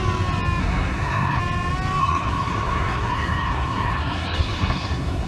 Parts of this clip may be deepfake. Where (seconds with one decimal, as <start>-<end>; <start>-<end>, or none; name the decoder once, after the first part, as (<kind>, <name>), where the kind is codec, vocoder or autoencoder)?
0.6-1.4 (codec, SNAC); 2.0-5.3